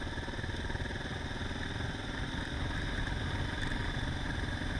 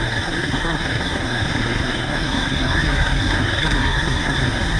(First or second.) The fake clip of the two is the second